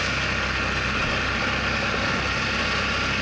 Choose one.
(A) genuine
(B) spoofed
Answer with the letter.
A